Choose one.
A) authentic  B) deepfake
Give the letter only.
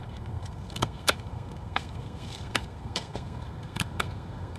B